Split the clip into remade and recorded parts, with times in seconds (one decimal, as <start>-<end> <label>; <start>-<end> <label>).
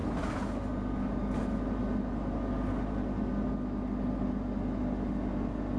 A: 0.0-5.8 recorded